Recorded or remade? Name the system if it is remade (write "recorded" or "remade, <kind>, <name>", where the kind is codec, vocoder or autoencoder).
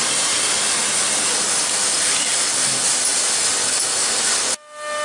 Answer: recorded